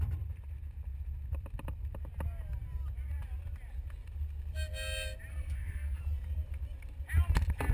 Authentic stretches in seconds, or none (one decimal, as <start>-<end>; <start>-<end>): 0.0-5.3; 6.0-7.7